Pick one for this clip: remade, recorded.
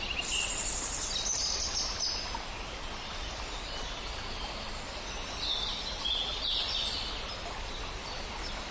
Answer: recorded